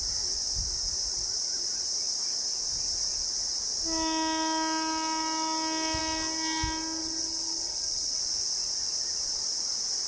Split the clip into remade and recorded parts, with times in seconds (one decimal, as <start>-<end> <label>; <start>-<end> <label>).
0.0-7.0 recorded; 7.0-8.2 remade; 8.2-10.1 recorded

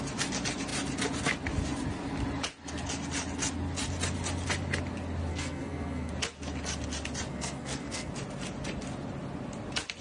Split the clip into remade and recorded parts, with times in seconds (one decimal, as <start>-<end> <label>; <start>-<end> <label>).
0.0-5.3 recorded; 5.3-6.1 remade; 6.1-7.3 recorded; 7.3-8.1 remade; 8.1-10.0 recorded

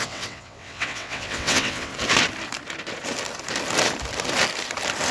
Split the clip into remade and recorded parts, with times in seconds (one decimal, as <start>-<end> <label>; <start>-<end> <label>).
0.0-1.9 remade; 1.9-5.1 recorded

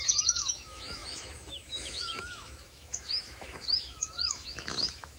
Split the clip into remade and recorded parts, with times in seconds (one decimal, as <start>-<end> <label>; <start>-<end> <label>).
0.0-5.2 remade